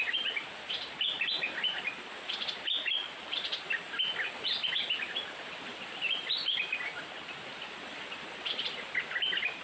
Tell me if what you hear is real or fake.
fake